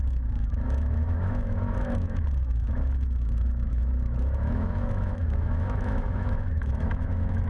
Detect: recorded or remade remade